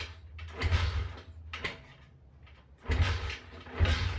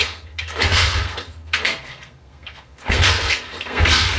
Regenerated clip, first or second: second